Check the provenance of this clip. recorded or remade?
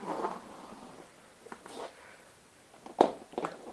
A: recorded